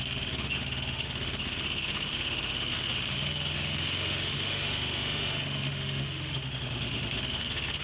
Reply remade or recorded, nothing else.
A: remade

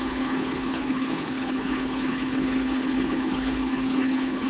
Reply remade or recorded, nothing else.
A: remade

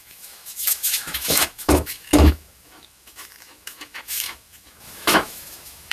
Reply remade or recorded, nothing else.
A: remade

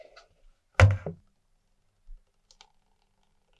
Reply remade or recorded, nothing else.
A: recorded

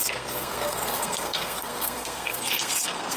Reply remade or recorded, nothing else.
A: remade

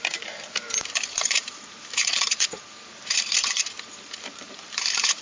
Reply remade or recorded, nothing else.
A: remade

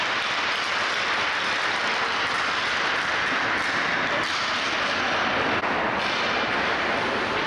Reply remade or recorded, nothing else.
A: recorded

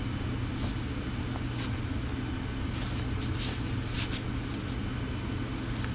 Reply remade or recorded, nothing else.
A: recorded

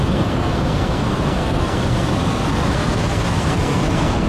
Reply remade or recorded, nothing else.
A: remade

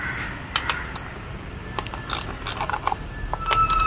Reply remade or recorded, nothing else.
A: recorded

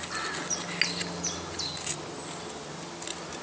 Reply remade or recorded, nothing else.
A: recorded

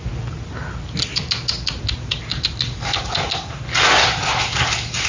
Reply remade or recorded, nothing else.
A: recorded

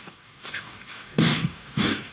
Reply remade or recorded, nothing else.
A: remade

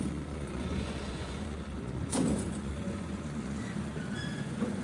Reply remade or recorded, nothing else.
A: remade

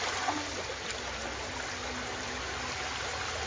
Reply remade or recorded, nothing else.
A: recorded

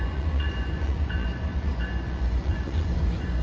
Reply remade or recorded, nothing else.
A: remade